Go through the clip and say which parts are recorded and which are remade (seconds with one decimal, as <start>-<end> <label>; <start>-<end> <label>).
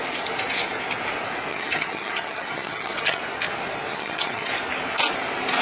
0.0-1.5 recorded; 1.5-3.2 remade; 3.2-3.9 recorded; 3.9-4.5 remade; 4.5-5.6 recorded